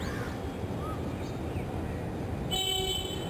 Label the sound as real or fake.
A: real